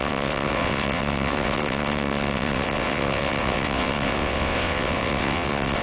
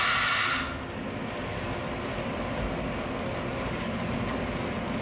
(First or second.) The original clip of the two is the second